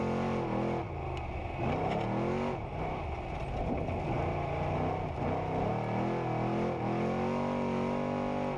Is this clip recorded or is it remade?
recorded